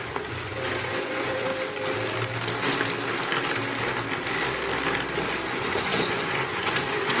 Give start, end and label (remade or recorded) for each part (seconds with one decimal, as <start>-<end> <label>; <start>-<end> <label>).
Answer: 0.0-1.5 remade; 1.5-5.5 recorded; 5.5-7.2 remade